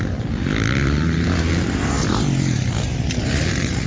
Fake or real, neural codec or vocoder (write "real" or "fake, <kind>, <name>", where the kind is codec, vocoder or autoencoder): real